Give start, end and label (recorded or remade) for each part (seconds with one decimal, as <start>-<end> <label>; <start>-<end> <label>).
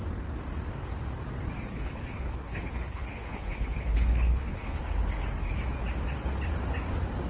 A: 0.0-1.7 recorded; 1.7-4.8 remade; 4.8-7.3 recorded